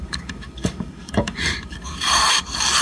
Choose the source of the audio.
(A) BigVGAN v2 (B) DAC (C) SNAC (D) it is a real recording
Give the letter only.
B